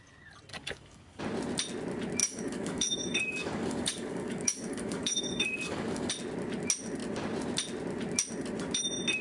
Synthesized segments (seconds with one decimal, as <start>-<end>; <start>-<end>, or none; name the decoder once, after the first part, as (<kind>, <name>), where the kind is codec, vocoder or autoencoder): 0.5-1.2 (codec, DAC); 2.2-6.1